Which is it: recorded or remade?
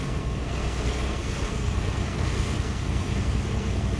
remade